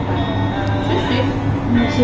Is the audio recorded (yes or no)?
yes